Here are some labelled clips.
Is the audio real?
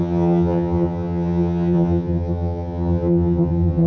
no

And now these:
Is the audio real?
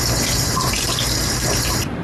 yes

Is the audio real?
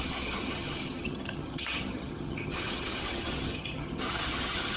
no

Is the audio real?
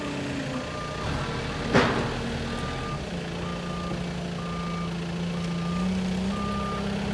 yes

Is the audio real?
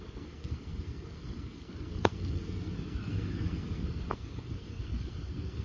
no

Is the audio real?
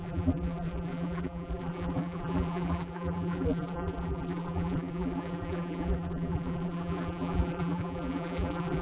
no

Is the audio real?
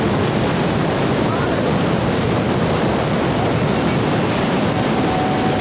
yes